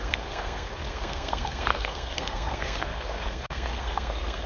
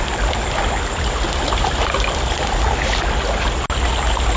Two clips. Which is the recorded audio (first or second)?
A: second